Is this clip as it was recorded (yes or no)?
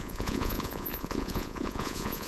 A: no